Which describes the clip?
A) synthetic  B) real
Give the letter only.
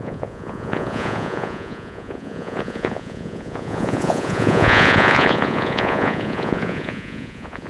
A